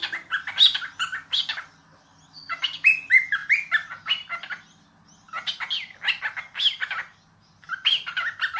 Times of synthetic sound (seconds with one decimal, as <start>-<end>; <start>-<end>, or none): none